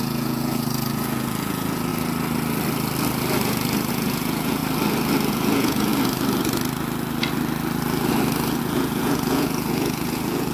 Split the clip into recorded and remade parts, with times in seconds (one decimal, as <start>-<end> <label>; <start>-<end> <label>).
0.0-1.9 remade; 1.9-3.9 recorded; 3.9-4.6 remade; 4.6-5.3 recorded; 5.3-5.9 remade; 5.9-8.6 recorded; 8.6-10.5 remade